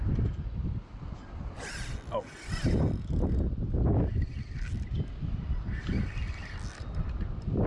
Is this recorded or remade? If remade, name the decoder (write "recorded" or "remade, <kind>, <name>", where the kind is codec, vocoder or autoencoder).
recorded